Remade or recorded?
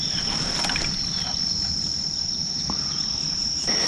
remade